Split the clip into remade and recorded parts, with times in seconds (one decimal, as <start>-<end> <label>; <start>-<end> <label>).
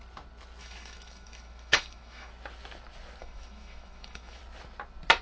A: 0.0-0.6 recorded; 0.6-2.3 remade; 2.3-3.2 recorded; 3.2-4.4 remade; 4.4-5.2 recorded